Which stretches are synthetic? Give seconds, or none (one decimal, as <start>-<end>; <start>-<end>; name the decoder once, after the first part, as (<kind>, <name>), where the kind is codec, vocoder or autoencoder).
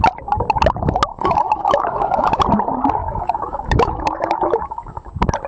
1.1-2.4 (autoencoder, DAC-VAE); 3.0-5.1